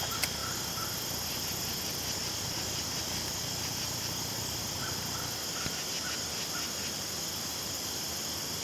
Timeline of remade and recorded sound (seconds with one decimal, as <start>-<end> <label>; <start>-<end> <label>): 0.0-8.6 recorded